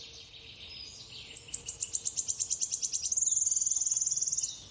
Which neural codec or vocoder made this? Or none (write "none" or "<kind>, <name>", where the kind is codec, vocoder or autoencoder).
none